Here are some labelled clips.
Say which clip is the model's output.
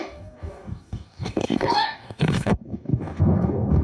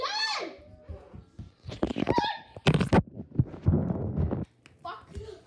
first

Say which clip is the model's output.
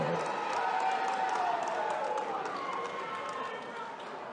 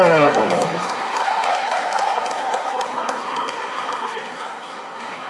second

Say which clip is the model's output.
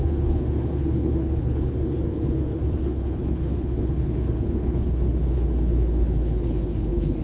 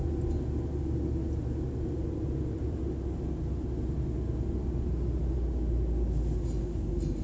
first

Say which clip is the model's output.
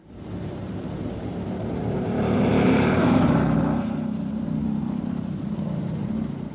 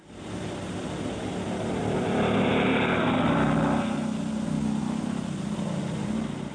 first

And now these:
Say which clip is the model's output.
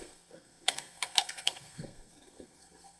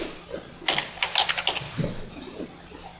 first